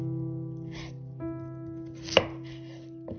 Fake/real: real